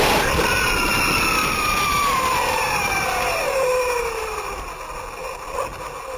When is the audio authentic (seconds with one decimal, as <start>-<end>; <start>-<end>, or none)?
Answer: 0.0-1.4; 4.6-6.2